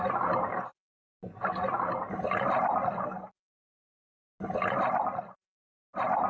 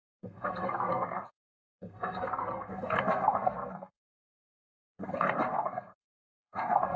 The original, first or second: first